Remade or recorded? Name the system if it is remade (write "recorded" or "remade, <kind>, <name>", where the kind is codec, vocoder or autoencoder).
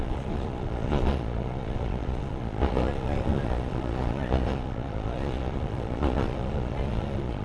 remade, vocoder, Vocos